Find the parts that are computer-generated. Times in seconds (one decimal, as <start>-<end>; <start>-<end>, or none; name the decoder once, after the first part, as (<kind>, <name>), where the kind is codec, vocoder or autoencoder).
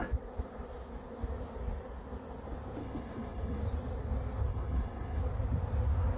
2.8-3.6 (codec, HILCodec); 4.5-5.2